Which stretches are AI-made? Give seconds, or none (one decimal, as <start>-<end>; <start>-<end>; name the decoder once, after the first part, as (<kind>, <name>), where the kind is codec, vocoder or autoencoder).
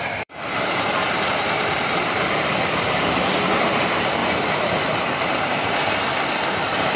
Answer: 0.0-7.0 (vocoder, BigVGAN v2)